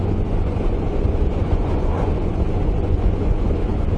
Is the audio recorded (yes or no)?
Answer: no